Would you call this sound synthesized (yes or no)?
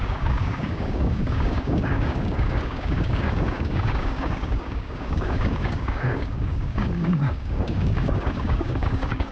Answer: yes